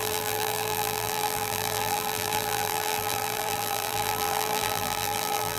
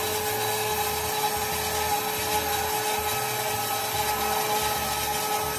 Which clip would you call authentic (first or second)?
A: second